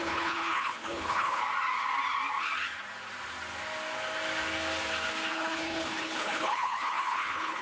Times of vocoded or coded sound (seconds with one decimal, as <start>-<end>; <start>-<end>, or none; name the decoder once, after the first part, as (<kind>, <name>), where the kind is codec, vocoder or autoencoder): 0.0-1.4 (codec, HILCodec); 5.3-7.6